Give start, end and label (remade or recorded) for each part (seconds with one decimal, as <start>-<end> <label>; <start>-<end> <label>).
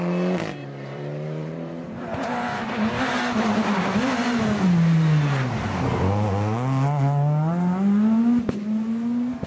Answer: 0.0-0.6 recorded; 0.6-3.6 remade; 3.6-9.5 recorded